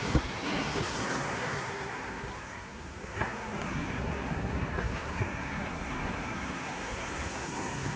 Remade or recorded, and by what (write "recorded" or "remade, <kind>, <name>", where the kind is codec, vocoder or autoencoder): remade, codec, SNAC